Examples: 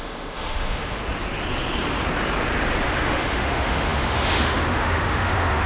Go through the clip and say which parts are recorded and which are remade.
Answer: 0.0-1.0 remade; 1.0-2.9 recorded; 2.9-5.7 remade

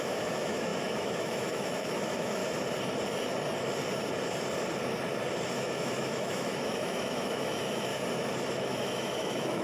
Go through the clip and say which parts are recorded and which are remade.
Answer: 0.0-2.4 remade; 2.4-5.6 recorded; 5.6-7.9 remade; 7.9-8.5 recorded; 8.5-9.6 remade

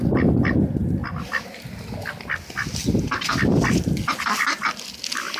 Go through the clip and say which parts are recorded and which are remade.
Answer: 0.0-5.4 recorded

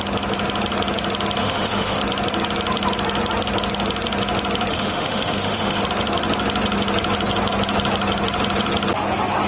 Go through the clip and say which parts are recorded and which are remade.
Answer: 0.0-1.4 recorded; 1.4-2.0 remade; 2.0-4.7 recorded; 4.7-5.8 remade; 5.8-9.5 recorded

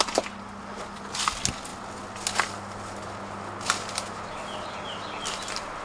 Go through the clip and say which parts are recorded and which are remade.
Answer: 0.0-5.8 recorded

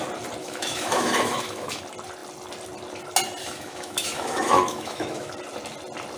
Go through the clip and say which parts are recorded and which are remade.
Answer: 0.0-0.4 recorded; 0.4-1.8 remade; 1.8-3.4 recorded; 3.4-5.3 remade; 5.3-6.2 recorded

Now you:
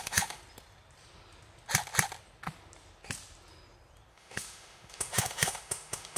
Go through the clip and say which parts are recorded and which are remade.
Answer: 0.0-0.4 remade; 0.4-4.1 recorded; 4.1-6.2 remade